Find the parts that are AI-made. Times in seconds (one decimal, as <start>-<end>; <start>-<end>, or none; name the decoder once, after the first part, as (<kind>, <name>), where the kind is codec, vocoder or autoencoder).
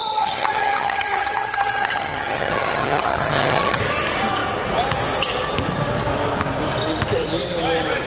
0.0-3.8 (vocoder, HiFi-GAN)